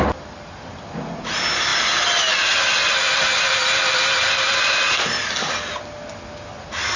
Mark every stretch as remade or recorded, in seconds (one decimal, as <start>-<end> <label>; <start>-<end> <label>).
0.0-7.0 recorded